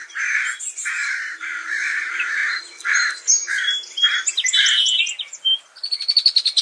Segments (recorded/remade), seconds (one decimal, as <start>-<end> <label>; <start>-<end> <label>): 0.0-0.6 recorded; 0.6-2.4 remade; 2.4-6.6 recorded